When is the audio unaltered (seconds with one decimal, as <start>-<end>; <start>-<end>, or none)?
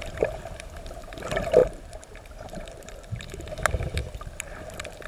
none